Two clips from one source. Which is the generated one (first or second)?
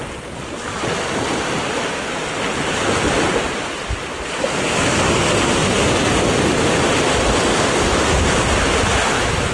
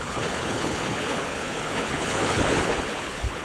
second